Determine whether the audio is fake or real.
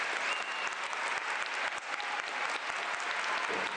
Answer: real